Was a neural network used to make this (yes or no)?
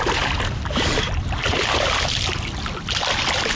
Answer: no